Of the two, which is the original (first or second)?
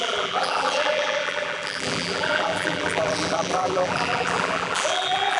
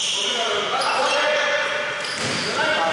second